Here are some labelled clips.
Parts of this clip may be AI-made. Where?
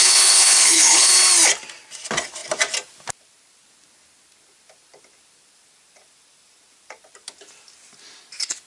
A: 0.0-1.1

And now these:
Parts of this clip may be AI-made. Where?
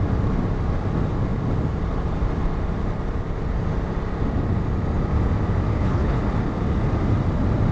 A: 5.7-6.2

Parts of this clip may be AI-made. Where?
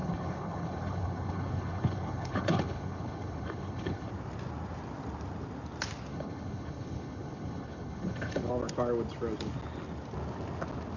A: 0.0-4.1; 6.1-8.5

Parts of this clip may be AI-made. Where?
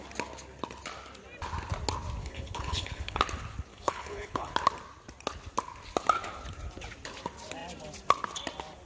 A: 2.2-3.2; 3.7-4.5